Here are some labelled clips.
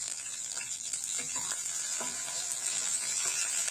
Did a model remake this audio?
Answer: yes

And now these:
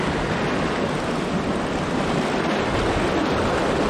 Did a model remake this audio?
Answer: no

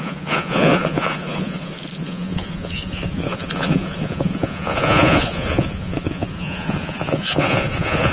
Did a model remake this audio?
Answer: yes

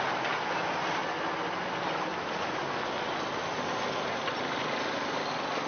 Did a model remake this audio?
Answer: no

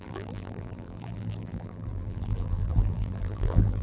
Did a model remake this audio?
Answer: yes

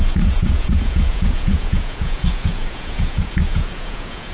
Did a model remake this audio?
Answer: yes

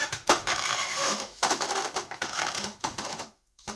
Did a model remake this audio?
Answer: yes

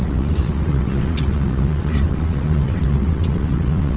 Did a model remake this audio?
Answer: yes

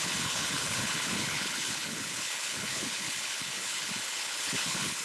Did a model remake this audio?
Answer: yes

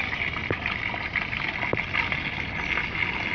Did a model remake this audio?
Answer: no